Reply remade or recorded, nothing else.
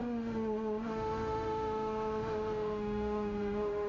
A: remade